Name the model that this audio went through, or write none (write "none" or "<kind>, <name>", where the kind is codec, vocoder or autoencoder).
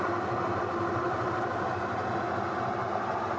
none